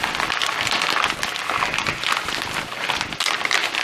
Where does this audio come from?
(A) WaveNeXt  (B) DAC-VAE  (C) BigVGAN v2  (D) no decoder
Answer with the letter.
D